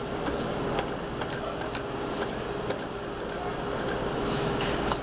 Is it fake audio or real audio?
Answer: real